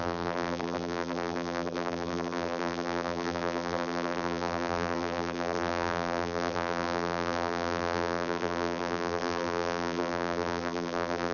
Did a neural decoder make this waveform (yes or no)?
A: yes